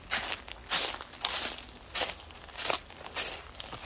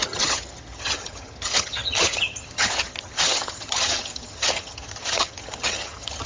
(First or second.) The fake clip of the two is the second